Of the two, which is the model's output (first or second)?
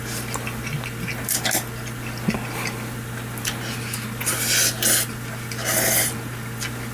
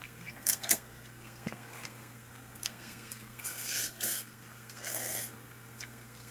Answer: second